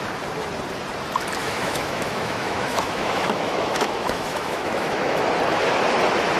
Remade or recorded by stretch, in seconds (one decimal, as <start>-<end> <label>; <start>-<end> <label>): 0.0-1.4 recorded; 1.4-5.2 remade; 5.2-6.4 recorded